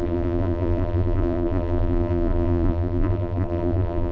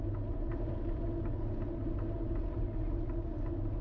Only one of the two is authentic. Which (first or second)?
second